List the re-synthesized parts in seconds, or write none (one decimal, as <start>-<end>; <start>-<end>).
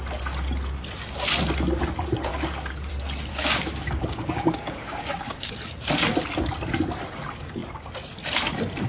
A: 3.3-5.5